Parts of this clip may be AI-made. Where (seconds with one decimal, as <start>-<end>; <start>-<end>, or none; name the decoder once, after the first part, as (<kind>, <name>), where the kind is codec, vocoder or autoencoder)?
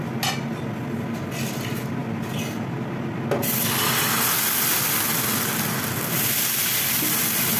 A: none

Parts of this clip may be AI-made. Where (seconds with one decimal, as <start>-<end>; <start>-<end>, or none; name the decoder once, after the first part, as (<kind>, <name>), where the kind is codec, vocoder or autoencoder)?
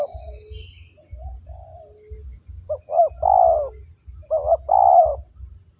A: none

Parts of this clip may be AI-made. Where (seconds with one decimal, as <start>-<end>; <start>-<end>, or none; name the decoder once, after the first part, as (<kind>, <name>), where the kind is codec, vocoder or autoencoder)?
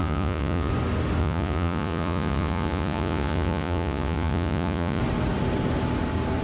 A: 0.0-0.7 (vocoder, Vocos); 1.2-5.0